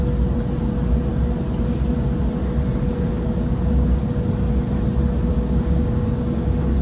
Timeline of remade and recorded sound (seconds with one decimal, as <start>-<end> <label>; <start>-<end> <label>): 0.0-2.9 recorded; 2.9-4.1 remade; 4.1-5.3 recorded; 5.3-6.8 remade